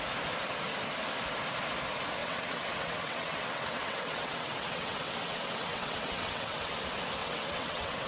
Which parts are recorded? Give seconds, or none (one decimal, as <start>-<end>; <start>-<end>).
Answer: 0.0-2.2; 6.7-7.2